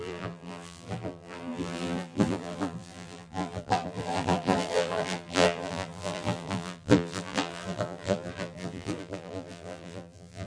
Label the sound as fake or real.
fake